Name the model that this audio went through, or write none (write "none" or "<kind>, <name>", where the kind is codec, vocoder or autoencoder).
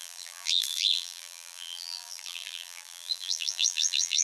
vocoder, BigVGAN v2